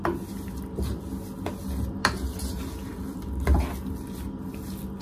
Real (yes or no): yes